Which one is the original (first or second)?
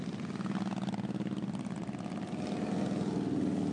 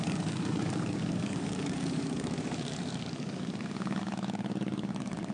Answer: first